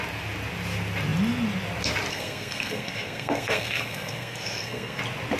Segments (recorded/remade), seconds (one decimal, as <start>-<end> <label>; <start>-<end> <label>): 0.0-2.1 recorded; 2.1-5.0 remade; 5.0-5.4 recorded